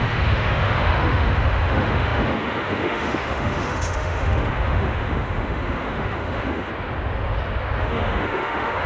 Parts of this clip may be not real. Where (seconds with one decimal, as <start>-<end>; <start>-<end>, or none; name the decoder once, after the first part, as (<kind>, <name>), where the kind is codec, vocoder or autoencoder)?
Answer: 0.0-6.7 (autoencoder, DAC-VAE); 7.8-8.9